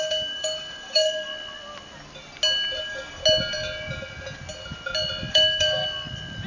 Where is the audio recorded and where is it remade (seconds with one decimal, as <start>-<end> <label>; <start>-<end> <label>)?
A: 0.0-1.3 remade; 1.3-2.8 recorded; 2.8-3.2 remade; 3.2-5.3 recorded; 5.3-5.8 remade; 5.8-6.5 recorded